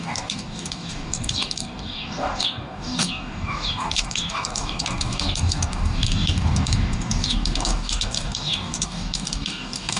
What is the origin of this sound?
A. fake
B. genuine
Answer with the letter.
A